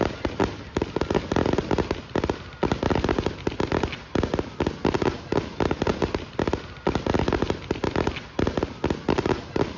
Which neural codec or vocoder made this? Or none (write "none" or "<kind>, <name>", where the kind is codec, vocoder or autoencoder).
none